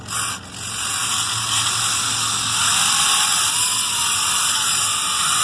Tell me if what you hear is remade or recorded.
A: recorded